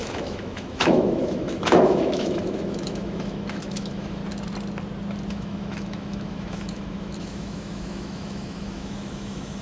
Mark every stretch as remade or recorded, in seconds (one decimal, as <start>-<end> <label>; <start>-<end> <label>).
0.0-4.2 remade; 4.2-5.3 recorded; 5.3-9.6 remade